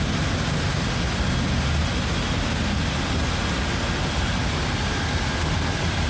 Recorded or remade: recorded